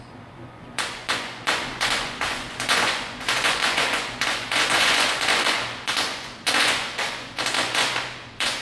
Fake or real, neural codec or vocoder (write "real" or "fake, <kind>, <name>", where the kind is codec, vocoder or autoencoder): fake, vocoder, Vocos